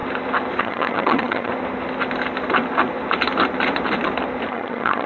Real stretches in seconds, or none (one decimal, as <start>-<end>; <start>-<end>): 0.0-0.6; 1.5-4.5